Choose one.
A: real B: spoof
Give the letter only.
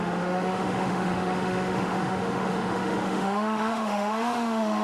B